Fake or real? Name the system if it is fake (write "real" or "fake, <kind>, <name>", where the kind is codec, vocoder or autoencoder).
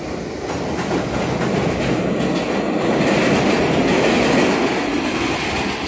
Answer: real